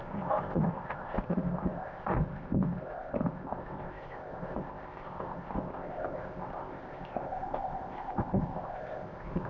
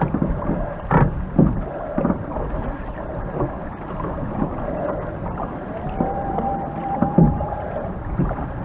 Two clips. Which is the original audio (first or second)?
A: second